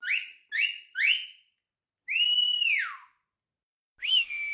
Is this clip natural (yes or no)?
yes